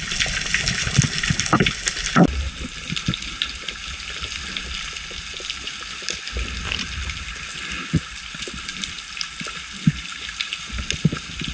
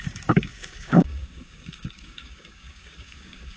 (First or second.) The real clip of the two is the first